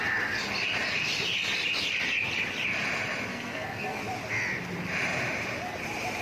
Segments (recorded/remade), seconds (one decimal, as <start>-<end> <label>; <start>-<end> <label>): 0.0-3.3 recorded; 3.3-4.0 remade; 4.0-6.2 recorded